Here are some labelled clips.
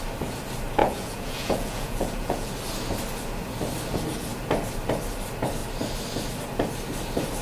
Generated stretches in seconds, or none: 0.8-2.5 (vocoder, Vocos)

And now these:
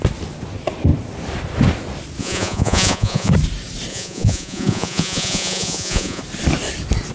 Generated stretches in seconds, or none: 2.2-3.3 (vocoder, Vocos); 3.9-6.2

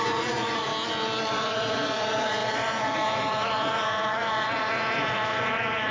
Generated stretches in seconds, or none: 0.0-0.7 (vocoder, Vocos); 1.3-5.9